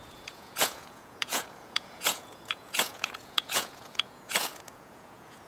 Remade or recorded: remade